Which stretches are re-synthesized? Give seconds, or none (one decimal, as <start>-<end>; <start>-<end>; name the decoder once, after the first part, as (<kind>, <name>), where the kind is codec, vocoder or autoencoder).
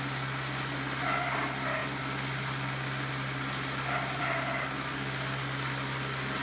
none